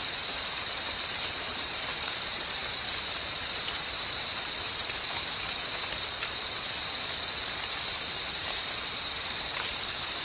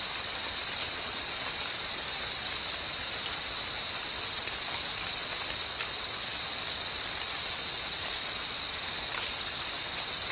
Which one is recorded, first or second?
second